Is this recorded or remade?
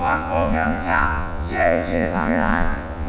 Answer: remade